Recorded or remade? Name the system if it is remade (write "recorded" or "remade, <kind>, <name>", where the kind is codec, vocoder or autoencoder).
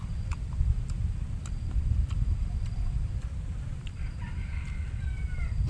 remade, vocoder, BigVGAN v2